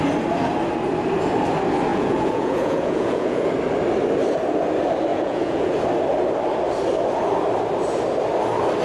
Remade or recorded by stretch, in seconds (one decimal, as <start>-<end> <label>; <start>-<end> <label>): 0.0-1.9 recorded; 1.9-3.5 remade; 3.5-5.1 recorded; 5.1-5.7 remade; 5.7-8.8 recorded